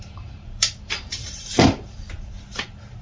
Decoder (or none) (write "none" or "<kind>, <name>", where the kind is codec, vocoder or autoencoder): vocoder, BigVGAN v2